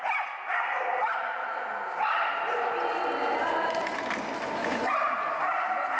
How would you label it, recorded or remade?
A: recorded